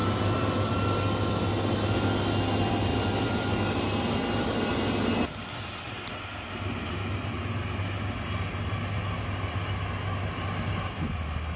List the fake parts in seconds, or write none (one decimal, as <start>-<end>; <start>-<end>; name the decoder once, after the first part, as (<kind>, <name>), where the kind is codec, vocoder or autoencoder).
0.0-0.7 (vocoder, BigVGAN v2); 2.9-3.5